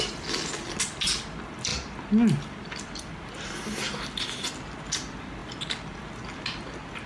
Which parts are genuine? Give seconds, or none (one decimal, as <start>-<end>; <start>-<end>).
0.0-7.1